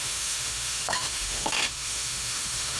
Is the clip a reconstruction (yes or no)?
yes